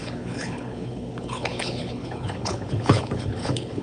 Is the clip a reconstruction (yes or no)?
yes